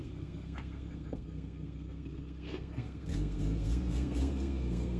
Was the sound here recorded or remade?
remade